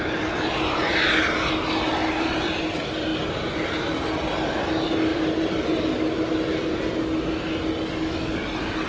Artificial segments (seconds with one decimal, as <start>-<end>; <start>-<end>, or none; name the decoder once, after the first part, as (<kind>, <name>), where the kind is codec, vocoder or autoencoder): 2.0-2.6 (vocoder, BigVGAN v2); 5.1-5.6